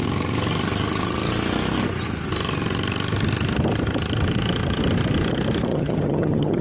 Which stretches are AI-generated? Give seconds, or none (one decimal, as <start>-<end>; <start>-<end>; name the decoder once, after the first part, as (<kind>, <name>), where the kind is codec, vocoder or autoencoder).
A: 5.7-6.6 (vocoder, HiFi-GAN)

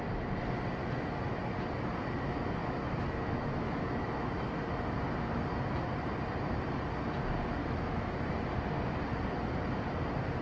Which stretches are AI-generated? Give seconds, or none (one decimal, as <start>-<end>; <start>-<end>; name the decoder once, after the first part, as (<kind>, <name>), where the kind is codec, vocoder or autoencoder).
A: 0.8-1.5 (autoencoder, DAC-VAE); 2.6-4.5; 7.6-8.3

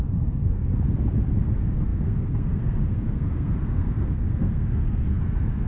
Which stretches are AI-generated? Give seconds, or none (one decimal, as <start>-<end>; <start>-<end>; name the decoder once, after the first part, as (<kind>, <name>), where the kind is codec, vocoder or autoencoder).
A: 0.0-0.7 (codec, SNAC); 1.3-5.7

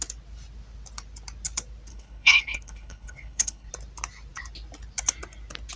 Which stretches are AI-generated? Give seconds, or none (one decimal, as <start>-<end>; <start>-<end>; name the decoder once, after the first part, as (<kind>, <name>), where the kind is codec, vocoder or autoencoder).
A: 1.9-3.7 (codec, HILCodec)

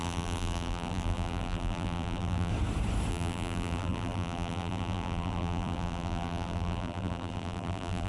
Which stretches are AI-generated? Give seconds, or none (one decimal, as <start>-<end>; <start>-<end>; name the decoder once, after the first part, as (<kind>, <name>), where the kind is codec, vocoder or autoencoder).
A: 0.0-2.5 (vocoder, BigVGAN v2); 3.1-8.1